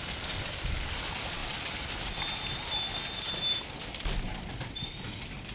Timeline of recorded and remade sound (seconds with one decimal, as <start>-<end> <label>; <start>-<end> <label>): 0.0-5.5 recorded